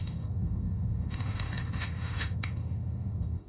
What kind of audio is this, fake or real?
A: fake